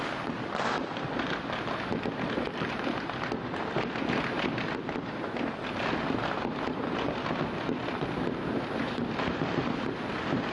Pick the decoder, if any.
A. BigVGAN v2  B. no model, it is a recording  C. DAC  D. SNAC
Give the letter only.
A